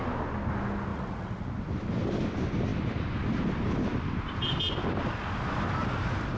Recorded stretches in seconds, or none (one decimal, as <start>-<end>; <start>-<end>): 0.0-0.9; 1.5-6.4